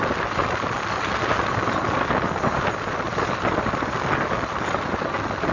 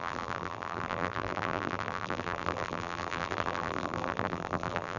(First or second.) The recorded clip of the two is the first